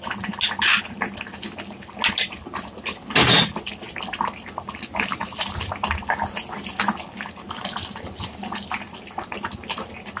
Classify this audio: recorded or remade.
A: recorded